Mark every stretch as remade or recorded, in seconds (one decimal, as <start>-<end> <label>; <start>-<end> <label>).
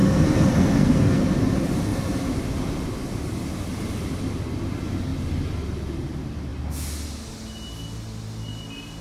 0.0-1.2 remade; 1.2-9.0 recorded